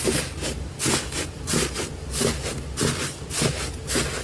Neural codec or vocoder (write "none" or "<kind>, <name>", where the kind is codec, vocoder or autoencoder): none